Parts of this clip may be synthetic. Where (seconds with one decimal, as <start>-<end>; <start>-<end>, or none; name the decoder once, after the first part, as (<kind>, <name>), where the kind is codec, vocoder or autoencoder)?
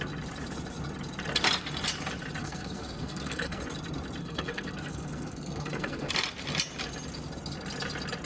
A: 2.4-3.6 (codec, SNAC); 4.2-6.1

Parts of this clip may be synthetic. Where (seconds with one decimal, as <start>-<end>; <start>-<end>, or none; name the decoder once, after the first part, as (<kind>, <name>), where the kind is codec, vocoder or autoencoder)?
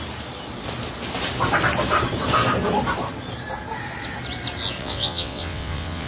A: 4.8-6.1 (vocoder, WaveNeXt)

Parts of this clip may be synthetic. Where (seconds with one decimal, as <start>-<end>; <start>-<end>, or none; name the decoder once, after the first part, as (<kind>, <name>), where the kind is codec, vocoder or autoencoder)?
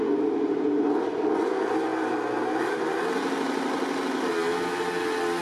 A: none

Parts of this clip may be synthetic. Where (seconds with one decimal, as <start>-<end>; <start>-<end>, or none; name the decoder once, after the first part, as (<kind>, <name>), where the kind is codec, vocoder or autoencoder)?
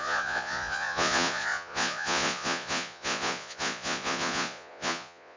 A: 0.0-5.4 (vocoder, Vocos)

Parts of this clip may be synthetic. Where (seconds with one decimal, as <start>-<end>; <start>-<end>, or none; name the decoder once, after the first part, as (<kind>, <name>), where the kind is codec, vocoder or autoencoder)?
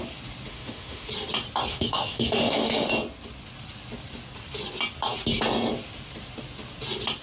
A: 0.5-1.1 (autoencoder, DAC-VAE); 1.7-2.9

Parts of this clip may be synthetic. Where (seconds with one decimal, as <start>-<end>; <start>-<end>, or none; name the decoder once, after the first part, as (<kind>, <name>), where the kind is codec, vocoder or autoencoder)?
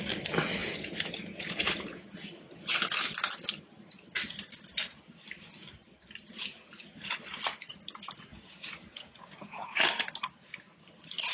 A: 0.6-2.4 (vocoder, Vocos); 8.3-10.1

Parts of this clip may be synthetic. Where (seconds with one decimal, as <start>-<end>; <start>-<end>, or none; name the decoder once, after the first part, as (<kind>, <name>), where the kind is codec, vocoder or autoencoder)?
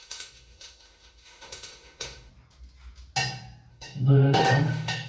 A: 0.0-2.3 (autoencoder, DAC-VAE); 3.7-5.1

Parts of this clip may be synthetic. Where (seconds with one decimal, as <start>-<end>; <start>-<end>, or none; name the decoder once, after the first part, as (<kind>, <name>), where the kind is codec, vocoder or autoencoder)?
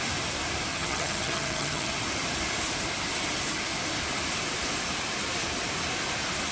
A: 0.7-1.9 (vocoder, HiFi-GAN)